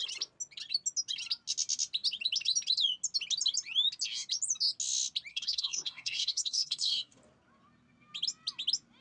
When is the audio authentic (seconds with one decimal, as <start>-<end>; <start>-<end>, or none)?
0.0-5.3; 7.2-9.0